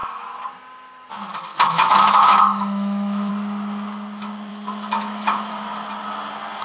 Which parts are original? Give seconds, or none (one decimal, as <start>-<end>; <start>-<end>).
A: 0.0-1.5; 3.3-4.5; 5.5-6.6

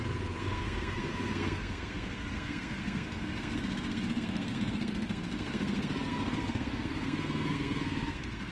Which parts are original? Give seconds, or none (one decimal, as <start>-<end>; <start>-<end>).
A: none

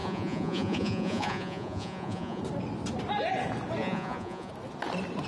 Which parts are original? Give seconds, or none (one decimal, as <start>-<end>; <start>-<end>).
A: 2.4-3.8; 4.5-5.3

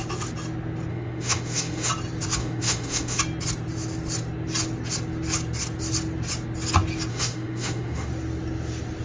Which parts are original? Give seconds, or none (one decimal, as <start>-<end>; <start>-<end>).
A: 0.0-0.9; 1.9-2.4; 3.2-7.1; 8.1-9.0